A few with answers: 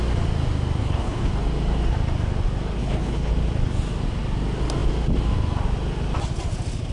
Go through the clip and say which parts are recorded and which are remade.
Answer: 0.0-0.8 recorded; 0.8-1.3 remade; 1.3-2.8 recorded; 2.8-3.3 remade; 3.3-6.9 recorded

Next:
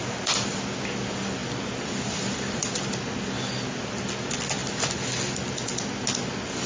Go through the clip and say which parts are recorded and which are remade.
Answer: 0.0-6.7 recorded

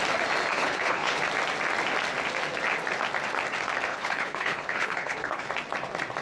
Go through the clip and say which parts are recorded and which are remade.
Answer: 0.0-0.5 recorded; 0.5-1.2 remade; 1.2-3.9 recorded; 3.9-5.5 remade; 5.5-6.2 recorded